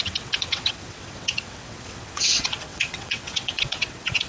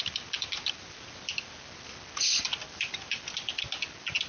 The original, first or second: second